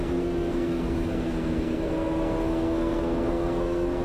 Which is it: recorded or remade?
remade